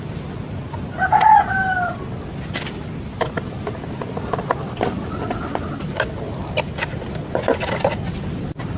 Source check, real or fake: real